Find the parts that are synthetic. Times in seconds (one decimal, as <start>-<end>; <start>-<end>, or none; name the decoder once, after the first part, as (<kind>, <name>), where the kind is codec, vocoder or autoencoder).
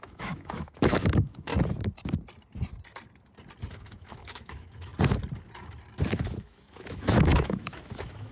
0.0-1.5 (autoencoder, DAC-VAE); 3.7-4.9; 6.1-8.3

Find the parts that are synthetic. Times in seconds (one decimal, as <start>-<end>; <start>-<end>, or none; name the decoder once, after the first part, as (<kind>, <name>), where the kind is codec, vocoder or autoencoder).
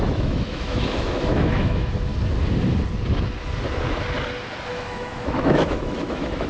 0.0-2.1 (autoencoder, DAC-VAE); 4.7-6.5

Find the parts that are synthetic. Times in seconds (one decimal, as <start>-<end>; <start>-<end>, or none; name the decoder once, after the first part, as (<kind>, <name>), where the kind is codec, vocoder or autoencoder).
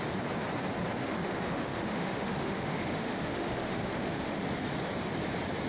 1.0-4.4 (autoencoder, DAC-VAE)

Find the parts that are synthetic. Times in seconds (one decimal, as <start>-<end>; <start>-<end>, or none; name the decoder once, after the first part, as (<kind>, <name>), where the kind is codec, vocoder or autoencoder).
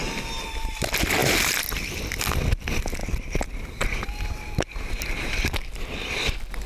3.0-6.7 (vocoder, BigVGAN v2)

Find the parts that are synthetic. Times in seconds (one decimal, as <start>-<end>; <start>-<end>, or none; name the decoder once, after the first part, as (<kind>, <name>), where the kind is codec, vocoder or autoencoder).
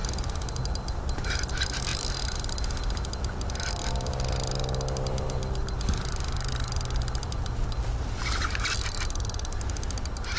none